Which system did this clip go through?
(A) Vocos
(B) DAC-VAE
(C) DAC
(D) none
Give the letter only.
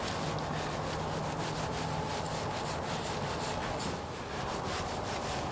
D